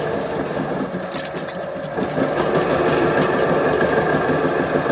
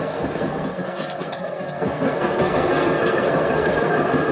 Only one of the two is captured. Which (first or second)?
first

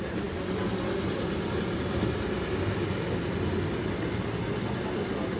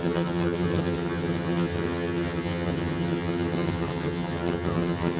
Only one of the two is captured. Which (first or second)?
first